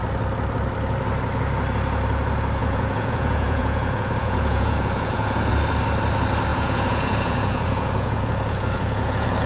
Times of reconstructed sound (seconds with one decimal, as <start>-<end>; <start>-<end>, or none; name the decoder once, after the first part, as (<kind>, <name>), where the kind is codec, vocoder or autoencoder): 2.6-5.5 (vocoder, Vocos); 6.5-9.5